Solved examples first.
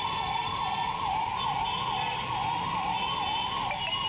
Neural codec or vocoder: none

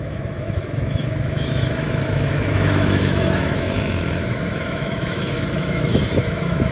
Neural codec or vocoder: autoencoder, DAC-VAE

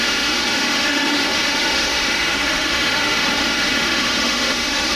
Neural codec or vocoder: autoencoder, DAC-VAE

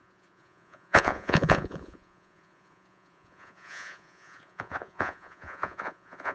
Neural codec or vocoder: vocoder, Vocos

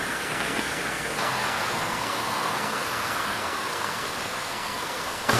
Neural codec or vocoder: codec, SNAC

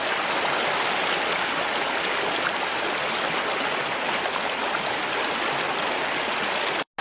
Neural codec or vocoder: none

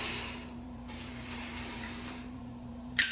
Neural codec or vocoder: vocoder, BigVGAN v2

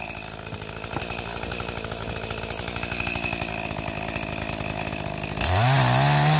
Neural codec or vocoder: none